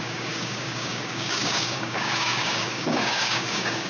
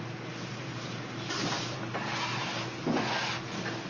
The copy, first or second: first